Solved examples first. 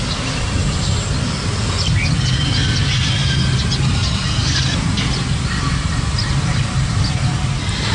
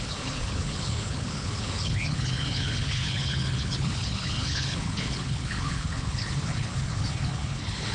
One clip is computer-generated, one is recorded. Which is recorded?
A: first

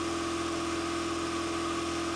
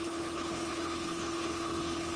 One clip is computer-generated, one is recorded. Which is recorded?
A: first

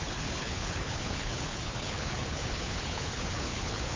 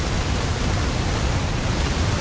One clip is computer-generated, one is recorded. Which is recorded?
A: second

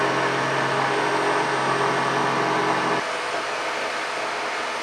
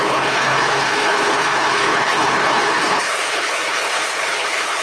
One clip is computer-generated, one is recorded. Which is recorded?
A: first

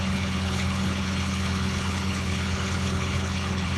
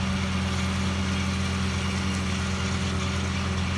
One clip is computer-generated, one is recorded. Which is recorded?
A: second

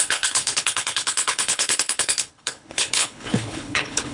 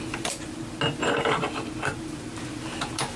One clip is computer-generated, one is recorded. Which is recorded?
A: second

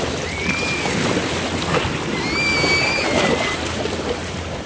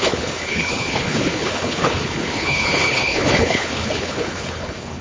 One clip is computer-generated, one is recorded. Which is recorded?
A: first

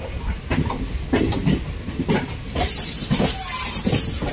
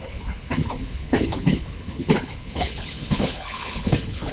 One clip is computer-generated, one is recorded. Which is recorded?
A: first